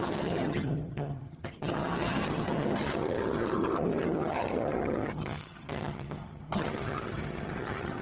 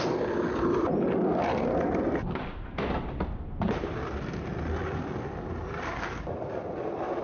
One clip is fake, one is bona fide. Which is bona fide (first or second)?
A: second